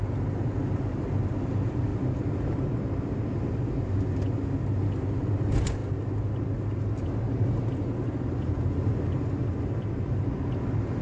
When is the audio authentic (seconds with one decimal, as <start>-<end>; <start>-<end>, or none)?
0.0-11.0